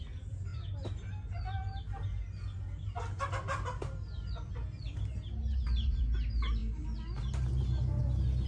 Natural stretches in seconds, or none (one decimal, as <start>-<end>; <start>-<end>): 0.0-8.5